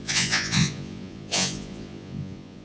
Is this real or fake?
fake